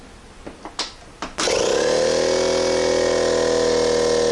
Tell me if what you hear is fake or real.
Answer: real